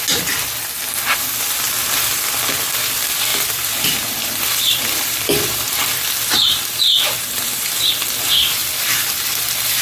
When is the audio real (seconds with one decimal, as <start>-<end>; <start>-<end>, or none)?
0.0-3.3; 7.9-8.6